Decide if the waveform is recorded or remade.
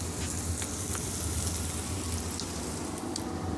recorded